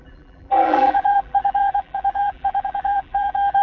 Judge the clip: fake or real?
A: fake